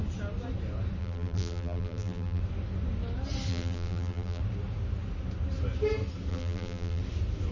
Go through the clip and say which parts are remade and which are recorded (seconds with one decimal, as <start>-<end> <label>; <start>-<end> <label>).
0.0-1.0 recorded; 1.0-2.4 remade; 2.4-3.5 recorded; 3.5-4.4 remade; 4.4-6.3 recorded; 6.3-7.0 remade; 7.0-7.5 recorded